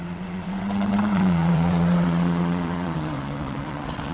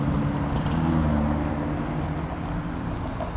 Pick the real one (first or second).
second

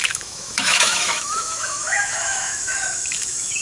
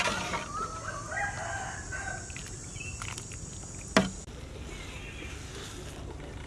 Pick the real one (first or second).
second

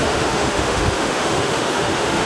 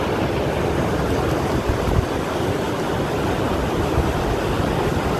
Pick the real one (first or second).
second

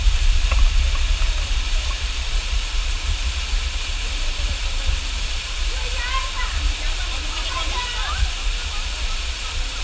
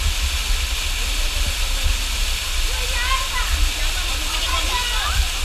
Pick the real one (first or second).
second